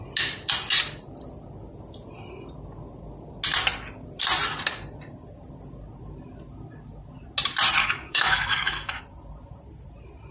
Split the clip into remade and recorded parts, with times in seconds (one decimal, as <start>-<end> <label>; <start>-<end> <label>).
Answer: 0.0-7.8 recorded; 7.8-9.0 remade; 9.0-10.3 recorded